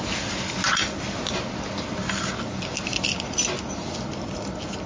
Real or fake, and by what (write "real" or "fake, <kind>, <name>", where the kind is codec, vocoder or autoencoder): real